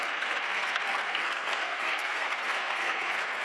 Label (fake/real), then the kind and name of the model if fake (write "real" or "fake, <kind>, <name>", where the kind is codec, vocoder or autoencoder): fake, codec, SNAC